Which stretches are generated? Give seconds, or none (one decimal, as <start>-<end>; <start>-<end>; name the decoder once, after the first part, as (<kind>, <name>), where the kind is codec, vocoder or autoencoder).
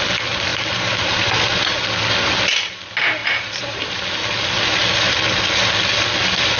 0.5-1.6 (vocoder, BigVGAN v2); 3.2-4.1